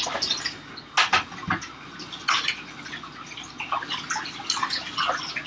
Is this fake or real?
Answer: real